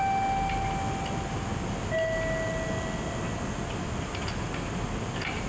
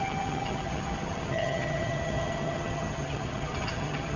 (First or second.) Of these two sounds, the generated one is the second